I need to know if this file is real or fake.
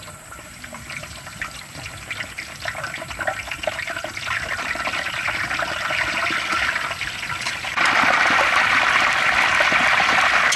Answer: fake